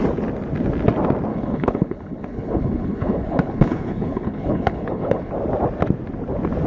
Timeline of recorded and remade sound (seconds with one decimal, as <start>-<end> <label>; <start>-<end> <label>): 0.0-1.3 recorded; 1.3-5.3 remade; 5.3-6.7 recorded

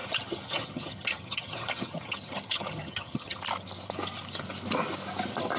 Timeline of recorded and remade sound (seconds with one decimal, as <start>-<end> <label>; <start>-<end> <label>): 0.0-3.4 remade; 3.4-5.6 recorded

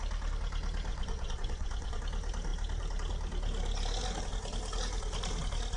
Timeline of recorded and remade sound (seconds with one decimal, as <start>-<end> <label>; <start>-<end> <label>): 0.0-0.9 recorded; 0.9-2.0 remade; 2.0-5.8 recorded

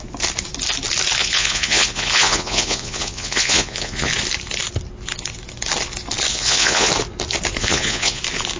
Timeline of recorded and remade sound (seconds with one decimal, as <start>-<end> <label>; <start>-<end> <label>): 0.0-1.2 recorded; 1.2-4.1 remade; 4.1-6.3 recorded; 6.3-6.9 remade; 6.9-7.6 recorded; 7.6-8.2 remade; 8.2-8.6 recorded

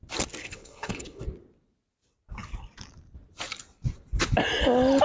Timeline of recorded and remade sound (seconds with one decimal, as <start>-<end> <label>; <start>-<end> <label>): 0.0-0.4 recorded; 0.4-1.2 remade; 1.2-5.0 recorded

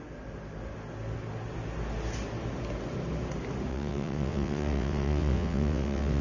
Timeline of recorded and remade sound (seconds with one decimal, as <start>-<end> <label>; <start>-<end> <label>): 0.0-3.7 recorded; 3.7-6.2 remade

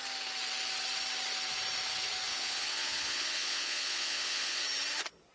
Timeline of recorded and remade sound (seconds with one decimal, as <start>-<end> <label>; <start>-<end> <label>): 0.0-2.3 recorded; 2.3-4.6 remade; 4.6-5.3 recorded